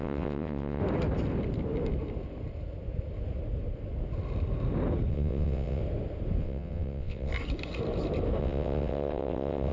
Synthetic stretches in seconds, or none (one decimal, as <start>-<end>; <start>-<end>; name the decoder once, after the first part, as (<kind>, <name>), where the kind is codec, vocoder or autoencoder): 0.0-0.8 (vocoder, WaveNeXt); 5.1-5.8; 6.4-7.3; 8.4-9.7